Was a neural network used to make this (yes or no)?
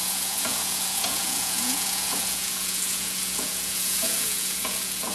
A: yes